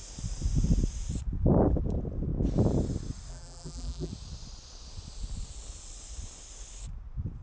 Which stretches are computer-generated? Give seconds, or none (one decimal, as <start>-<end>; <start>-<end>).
3.3-4.1